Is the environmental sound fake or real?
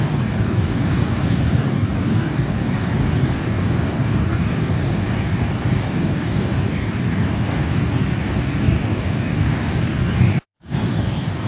fake